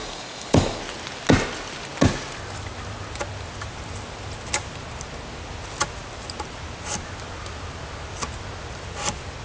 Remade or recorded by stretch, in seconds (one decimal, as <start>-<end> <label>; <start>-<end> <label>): 0.0-0.8 remade; 0.8-9.4 recorded